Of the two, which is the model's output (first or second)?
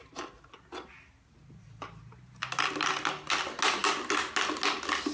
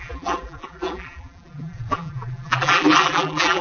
second